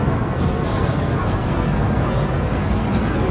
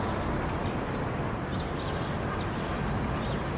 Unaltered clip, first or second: second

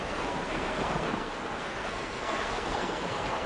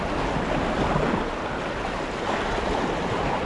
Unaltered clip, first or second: second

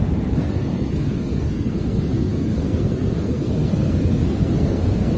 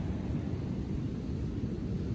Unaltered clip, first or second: second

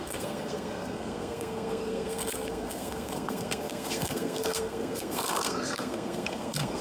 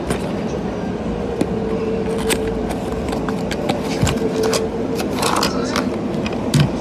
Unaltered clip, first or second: second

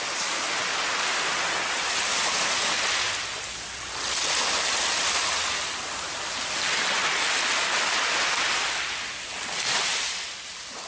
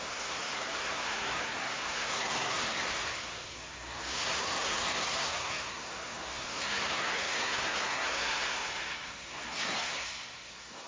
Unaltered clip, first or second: first